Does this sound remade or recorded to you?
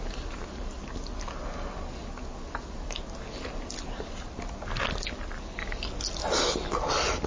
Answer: recorded